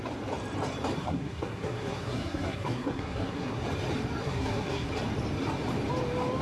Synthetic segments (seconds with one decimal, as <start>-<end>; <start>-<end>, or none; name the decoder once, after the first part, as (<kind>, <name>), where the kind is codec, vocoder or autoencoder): 1.0-3.6 (codec, SNAC); 4.2-4.9